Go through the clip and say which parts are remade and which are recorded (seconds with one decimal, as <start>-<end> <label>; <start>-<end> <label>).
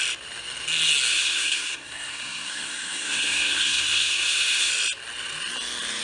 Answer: 0.0-1.1 recorded; 1.1-4.7 remade; 4.7-6.0 recorded